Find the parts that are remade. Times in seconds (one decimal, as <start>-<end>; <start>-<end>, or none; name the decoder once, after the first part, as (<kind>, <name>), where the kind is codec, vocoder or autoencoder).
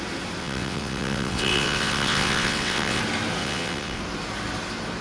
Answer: 0.4-3.0 (vocoder, WaveNeXt); 3.4-4.0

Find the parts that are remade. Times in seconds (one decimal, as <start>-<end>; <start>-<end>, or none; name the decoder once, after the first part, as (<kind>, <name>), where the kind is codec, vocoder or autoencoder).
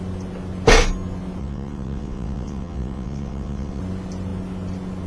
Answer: 1.4-3.8 (vocoder, WaveNeXt)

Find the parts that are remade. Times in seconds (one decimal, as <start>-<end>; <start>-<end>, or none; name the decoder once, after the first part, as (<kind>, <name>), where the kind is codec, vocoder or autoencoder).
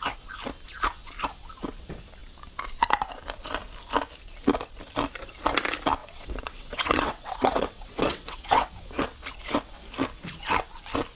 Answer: 6.0-8.7 (vocoder, WaveNeXt)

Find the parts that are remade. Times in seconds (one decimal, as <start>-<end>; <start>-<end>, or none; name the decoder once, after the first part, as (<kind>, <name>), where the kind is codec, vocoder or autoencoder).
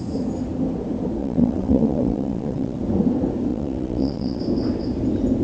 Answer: 1.2-2.8 (vocoder, WaveNeXt); 3.5-4.4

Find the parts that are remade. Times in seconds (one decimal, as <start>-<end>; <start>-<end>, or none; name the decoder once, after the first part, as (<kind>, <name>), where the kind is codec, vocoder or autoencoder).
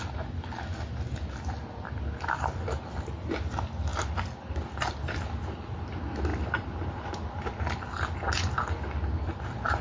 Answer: none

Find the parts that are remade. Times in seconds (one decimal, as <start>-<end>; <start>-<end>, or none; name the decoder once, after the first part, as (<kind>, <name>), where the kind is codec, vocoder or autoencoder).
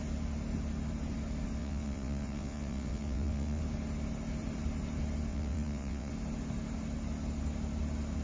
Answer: 1.6-3.6 (vocoder, WaveNeXt); 5.3-6.1